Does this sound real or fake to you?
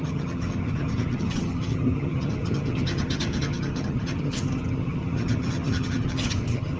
fake